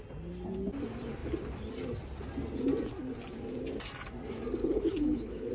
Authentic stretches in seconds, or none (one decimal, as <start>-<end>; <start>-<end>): 0.0-4.6